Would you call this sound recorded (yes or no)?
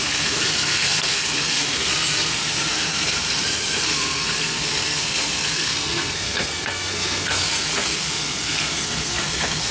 no